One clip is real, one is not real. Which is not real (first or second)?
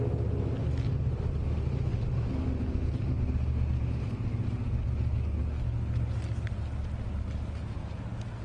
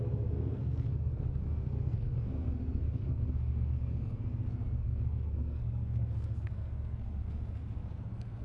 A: second